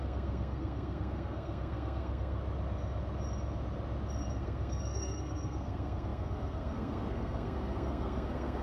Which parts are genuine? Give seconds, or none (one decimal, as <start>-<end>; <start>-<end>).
2.4-4.3